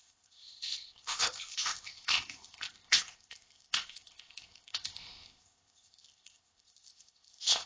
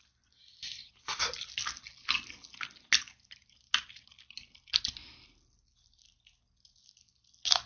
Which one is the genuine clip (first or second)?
second